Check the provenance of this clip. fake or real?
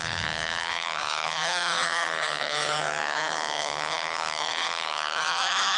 fake